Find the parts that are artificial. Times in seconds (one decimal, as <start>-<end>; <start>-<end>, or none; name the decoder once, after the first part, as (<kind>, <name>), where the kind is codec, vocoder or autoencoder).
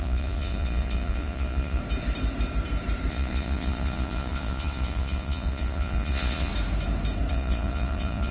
0.0-1.8 (vocoder, Vocos); 3.1-6.5; 7.3-8.3